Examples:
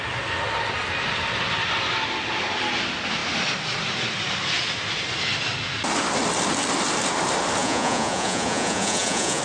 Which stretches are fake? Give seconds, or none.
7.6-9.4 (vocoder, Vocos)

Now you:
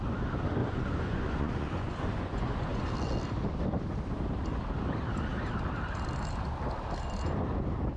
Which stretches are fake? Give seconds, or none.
0.6-2.9 (vocoder, Vocos)

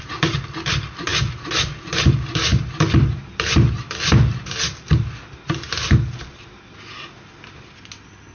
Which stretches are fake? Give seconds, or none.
none

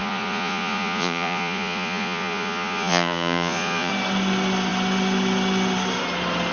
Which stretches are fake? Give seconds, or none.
0.0-3.9 (vocoder, Vocos)